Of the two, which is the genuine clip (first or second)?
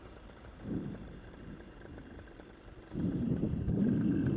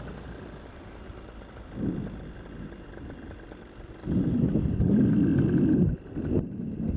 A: second